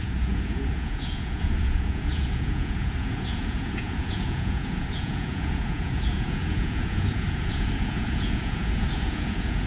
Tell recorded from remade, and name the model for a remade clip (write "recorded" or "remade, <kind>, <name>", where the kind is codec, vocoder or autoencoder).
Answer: remade, vocoder, Vocos